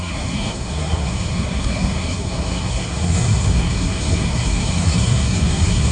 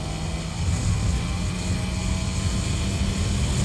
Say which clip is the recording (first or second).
second